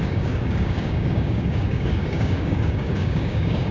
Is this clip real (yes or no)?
no